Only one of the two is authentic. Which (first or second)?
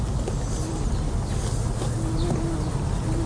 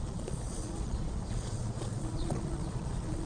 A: first